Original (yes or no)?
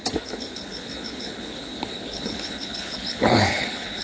no